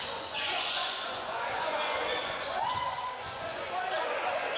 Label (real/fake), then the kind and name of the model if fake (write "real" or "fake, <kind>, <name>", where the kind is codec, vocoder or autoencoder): fake, vocoder, Vocos